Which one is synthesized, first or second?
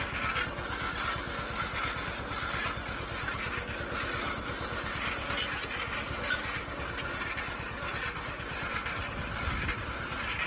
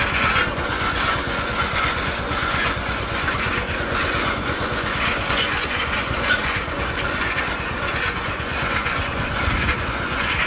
second